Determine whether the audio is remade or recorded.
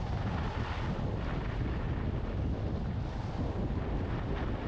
recorded